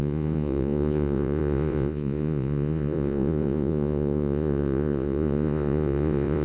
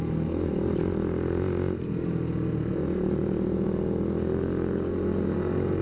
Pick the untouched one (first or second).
second